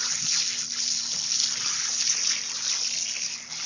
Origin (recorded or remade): recorded